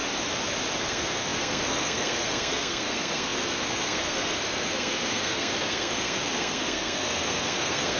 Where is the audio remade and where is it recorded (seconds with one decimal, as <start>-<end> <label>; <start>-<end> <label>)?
0.0-0.8 recorded; 0.8-8.0 remade